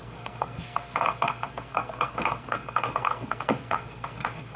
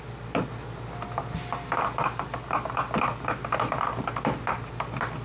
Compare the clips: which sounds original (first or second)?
second